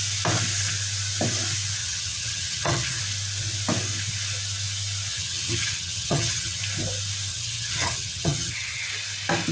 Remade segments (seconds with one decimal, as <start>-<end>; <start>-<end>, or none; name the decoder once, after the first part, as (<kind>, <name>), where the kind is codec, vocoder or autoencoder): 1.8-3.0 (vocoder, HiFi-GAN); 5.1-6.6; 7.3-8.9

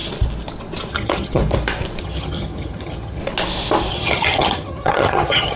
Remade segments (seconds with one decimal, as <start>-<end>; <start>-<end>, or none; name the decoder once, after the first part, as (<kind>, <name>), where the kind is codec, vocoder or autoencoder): 0.9-1.4 (vocoder, HiFi-GAN); 2.0-3.2; 3.9-5.6

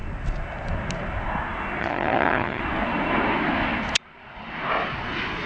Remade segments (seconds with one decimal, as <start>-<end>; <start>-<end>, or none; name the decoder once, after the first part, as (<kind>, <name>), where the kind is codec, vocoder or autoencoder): 1.8-2.6 (vocoder, HiFi-GAN)